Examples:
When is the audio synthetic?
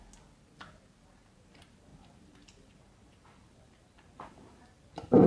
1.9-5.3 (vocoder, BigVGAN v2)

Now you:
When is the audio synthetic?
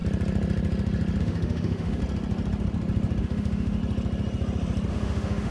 1.2-2.0 (autoencoder, DAC-VAE); 3.2-3.8; 4.9-5.5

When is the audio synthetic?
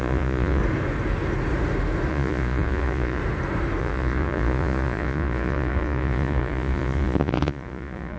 0.0-0.6 (vocoder, Vocos); 2.1-3.2; 3.8-8.2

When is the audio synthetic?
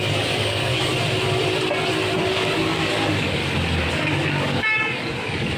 0.0-0.9 (codec, DAC); 2.2-3.4; 3.9-5.6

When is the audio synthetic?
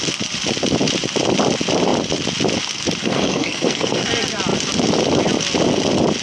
3.0-4.1 (codec, SNAC)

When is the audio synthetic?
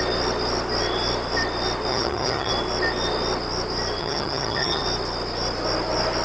1.9-2.5 (vocoder, HiFi-GAN); 4.0-4.8